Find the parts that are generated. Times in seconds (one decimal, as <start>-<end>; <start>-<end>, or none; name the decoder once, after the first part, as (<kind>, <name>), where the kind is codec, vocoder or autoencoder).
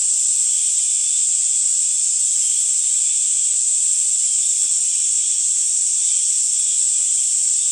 none